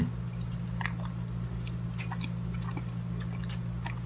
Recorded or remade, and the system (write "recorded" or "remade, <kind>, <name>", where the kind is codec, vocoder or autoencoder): recorded